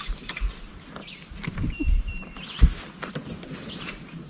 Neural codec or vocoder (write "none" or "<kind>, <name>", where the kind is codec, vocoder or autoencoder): none